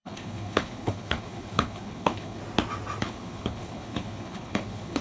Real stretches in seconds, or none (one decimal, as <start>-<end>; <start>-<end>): 2.4-3.0